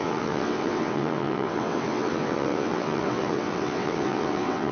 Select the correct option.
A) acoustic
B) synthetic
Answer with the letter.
B